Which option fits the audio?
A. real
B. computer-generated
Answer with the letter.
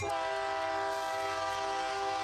A